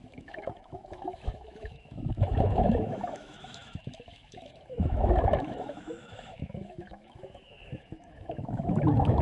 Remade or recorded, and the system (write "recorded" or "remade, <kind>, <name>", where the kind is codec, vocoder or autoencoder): remade, autoencoder, DAC-VAE